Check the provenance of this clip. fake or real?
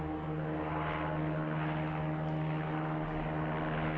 real